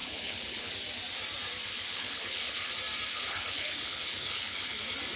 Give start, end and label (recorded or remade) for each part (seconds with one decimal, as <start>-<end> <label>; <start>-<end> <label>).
0.0-0.7 remade; 0.7-1.7 recorded; 1.7-2.7 remade; 2.7-3.1 recorded; 3.1-4.8 remade; 4.8-5.2 recorded